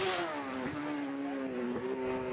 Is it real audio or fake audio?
real